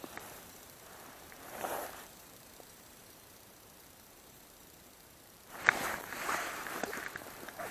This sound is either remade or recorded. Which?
remade